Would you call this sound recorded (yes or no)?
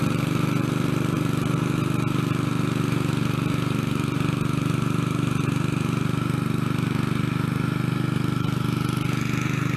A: yes